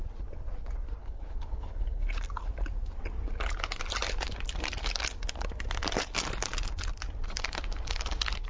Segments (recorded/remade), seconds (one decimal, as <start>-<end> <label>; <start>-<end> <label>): 0.0-1.0 recorded; 1.0-2.0 remade; 2.0-8.5 recorded